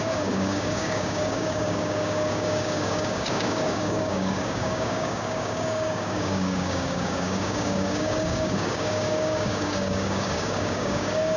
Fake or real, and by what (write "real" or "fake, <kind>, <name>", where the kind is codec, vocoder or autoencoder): fake, codec, DAC